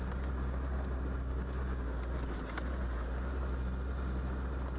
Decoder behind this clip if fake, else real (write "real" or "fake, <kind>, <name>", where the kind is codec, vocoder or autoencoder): real